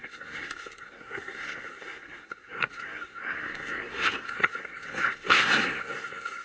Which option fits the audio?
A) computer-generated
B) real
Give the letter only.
A